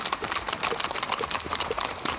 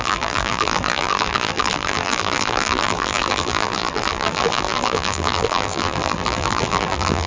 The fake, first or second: second